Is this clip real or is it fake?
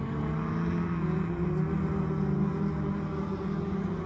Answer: real